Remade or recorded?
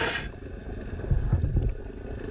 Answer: recorded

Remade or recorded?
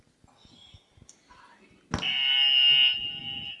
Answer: recorded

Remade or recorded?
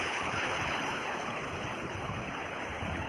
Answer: remade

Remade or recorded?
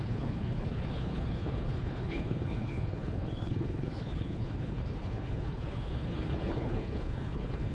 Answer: remade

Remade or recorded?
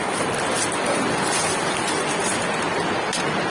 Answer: recorded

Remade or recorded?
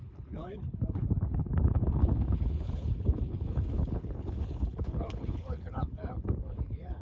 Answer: remade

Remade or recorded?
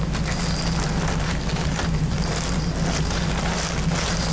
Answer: recorded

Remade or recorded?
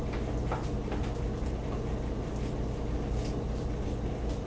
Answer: recorded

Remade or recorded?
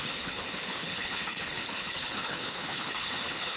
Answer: remade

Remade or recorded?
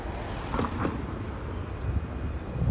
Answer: recorded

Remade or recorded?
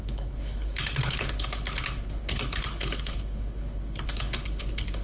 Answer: remade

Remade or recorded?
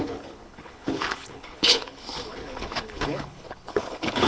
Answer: remade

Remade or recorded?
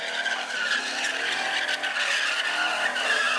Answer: recorded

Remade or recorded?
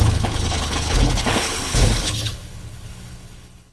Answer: remade